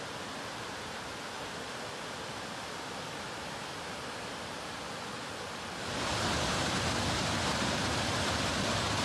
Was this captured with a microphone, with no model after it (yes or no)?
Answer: yes